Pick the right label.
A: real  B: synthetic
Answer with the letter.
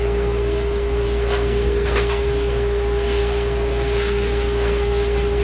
B